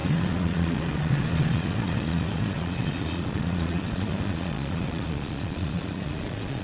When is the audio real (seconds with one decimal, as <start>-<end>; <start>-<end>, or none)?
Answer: none